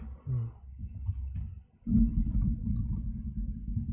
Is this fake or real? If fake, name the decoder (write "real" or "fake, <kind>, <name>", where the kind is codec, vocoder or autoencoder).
real